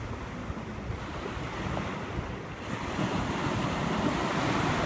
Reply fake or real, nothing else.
real